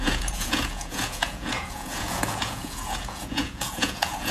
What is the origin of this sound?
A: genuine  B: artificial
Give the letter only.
B